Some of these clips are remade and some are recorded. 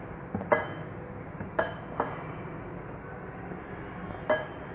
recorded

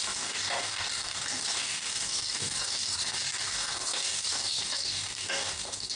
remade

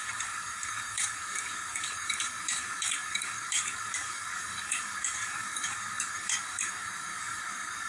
remade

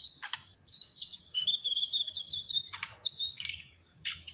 remade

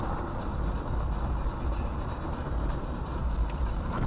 recorded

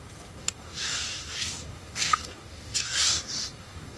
remade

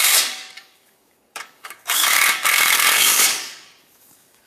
remade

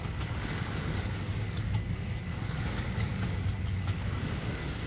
remade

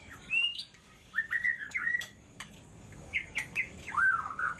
remade